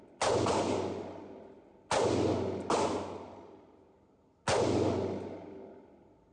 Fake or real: real